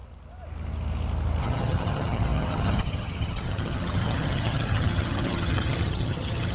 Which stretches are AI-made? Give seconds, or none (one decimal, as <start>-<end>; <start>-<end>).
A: 1.4-6.5